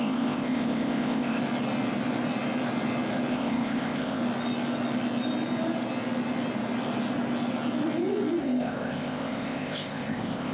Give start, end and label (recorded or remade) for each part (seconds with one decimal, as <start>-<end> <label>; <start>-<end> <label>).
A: 0.0-1.4 remade; 1.4-3.3 recorded; 3.3-4.2 remade; 4.2-8.4 recorded; 8.4-10.5 remade